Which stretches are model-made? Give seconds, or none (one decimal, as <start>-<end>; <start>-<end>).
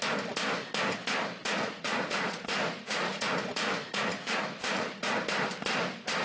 1.4-5.1